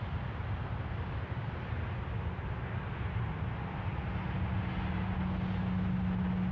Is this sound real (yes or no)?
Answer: yes